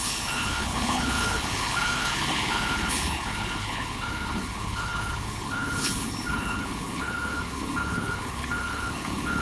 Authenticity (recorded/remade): remade